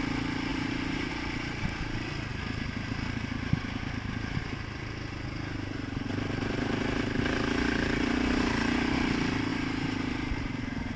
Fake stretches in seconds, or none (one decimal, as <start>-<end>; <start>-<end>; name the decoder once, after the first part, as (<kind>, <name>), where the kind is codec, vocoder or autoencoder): 0.5-1.1 (vocoder, BigVGAN v2); 9.5-10.3